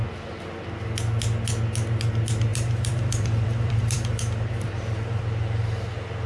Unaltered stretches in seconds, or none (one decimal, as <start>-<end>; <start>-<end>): 0.0-2.5; 5.2-6.3